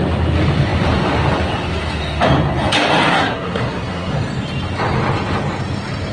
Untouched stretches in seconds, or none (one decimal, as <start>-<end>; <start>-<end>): 0.0-3.1; 4.1-6.1